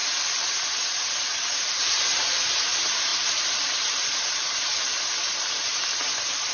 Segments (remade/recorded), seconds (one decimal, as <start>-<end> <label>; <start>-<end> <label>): 0.0-0.8 recorded; 0.8-4.9 remade; 4.9-5.4 recorded; 5.4-6.5 remade